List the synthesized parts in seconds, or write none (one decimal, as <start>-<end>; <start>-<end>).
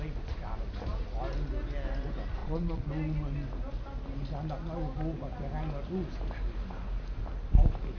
2.4-2.9